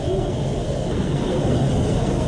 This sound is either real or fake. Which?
fake